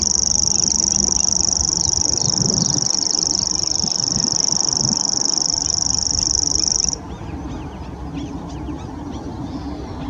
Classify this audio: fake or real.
real